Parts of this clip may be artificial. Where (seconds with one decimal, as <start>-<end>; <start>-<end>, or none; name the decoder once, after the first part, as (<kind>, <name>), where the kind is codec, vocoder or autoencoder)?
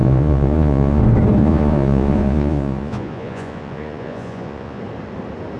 0.0-1.0 (vocoder, Vocos); 1.4-4.8